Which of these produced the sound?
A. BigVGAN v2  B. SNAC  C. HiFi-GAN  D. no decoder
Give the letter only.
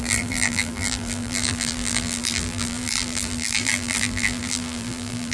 A